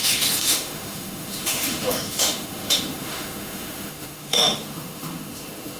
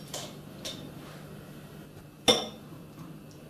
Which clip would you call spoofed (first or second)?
first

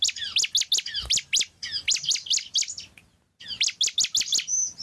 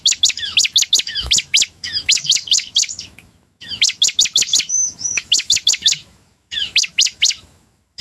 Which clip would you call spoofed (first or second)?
second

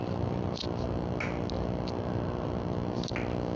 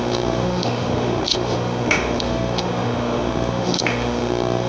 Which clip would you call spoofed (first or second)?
second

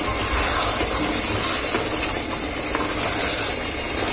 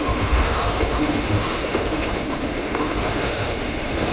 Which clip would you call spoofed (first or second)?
second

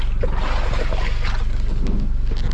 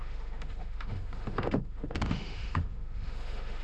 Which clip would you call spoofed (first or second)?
second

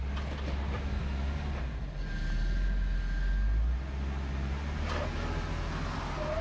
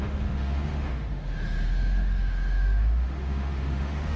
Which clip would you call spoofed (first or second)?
second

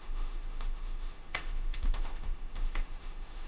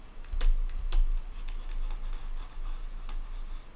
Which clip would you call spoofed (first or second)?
first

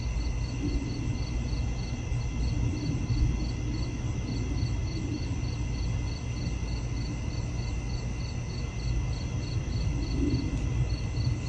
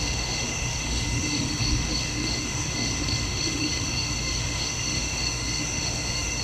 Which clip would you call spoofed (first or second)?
second